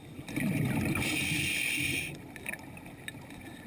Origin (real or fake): real